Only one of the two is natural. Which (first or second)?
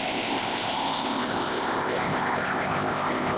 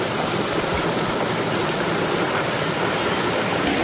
second